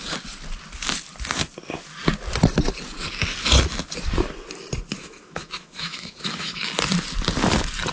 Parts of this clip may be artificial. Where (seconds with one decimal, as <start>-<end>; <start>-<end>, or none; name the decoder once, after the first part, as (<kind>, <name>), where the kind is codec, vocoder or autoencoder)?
5.0-6.6 (autoencoder, DAC-VAE)

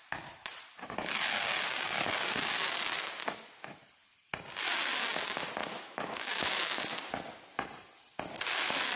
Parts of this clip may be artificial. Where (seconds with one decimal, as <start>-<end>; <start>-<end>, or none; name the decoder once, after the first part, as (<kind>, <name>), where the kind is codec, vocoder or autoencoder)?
5.6-7.0 (autoencoder, DAC-VAE)

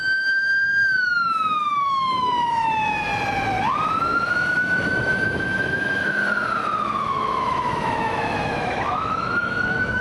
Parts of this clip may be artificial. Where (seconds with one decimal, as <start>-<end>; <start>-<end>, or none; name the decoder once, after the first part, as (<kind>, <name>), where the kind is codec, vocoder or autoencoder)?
0.0-3.1 (autoencoder, DAC-VAE); 4.3-6.2; 7.0-10.0

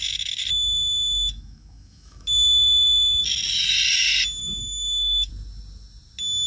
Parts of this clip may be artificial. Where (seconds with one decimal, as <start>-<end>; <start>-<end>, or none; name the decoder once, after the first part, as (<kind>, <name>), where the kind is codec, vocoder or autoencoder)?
0.0-3.2 (autoencoder, DAC-VAE); 4.4-5.3

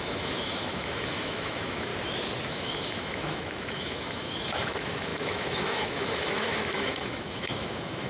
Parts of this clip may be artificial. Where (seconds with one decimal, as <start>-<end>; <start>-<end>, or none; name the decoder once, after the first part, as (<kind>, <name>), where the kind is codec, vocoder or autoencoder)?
0.0-1.9 (autoencoder, DAC-VAE); 2.5-8.1

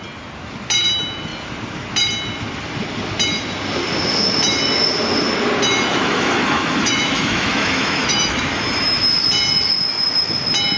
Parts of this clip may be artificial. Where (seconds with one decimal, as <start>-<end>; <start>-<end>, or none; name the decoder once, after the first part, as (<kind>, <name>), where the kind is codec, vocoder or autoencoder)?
5.9-9.0 (autoencoder, DAC-VAE)

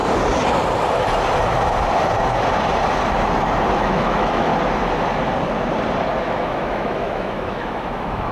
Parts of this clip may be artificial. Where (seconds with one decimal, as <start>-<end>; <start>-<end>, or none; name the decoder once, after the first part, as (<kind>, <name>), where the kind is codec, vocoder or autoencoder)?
3.7-4.5 (autoencoder, DAC-VAE); 6.2-8.3

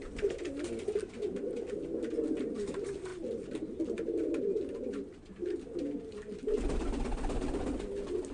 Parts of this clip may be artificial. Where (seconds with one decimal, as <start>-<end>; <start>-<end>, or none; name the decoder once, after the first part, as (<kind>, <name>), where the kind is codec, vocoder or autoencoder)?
none